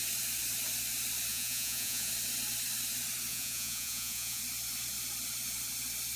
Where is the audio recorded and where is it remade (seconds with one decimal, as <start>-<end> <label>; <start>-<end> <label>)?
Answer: 0.0-1.3 recorded; 1.3-2.1 remade; 2.1-3.3 recorded; 3.3-4.4 remade; 4.4-6.2 recorded